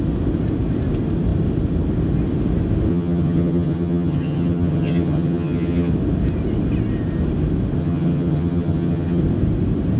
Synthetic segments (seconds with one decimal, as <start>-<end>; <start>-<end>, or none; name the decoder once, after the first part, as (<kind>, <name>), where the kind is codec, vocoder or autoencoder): 2.9-5.9 (vocoder, HiFi-GAN); 7.8-9.2